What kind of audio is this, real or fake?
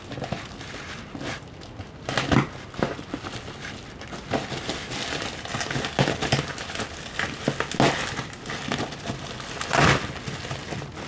real